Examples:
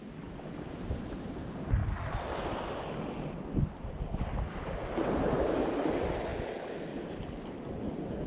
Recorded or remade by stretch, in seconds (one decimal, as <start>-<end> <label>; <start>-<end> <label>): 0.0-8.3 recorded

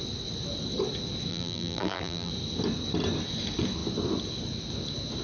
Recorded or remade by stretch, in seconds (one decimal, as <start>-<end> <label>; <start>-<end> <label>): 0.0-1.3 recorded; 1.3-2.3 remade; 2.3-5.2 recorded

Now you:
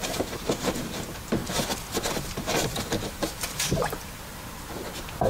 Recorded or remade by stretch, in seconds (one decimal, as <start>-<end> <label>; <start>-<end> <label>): 0.0-1.4 remade; 1.4-2.0 recorded; 2.0-5.3 remade

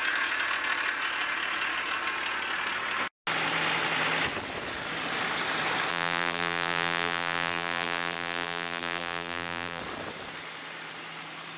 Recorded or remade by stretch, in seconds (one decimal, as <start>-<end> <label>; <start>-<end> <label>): 0.0-5.9 recorded; 5.9-9.8 remade; 9.8-11.6 recorded

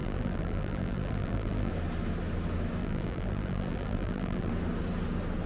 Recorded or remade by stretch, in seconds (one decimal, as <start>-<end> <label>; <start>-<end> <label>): 0.0-1.7 remade; 1.7-2.8 recorded; 2.8-4.5 remade; 4.5-5.5 recorded

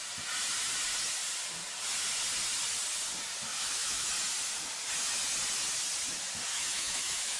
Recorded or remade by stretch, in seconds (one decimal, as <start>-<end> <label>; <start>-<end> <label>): 0.0-3.5 recorded; 3.5-4.1 remade; 4.1-6.5 recorded; 6.5-7.4 remade

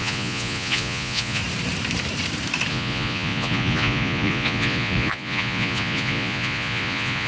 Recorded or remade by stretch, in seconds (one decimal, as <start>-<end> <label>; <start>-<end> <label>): 0.0-1.4 remade; 1.4-2.7 recorded; 2.7-7.3 remade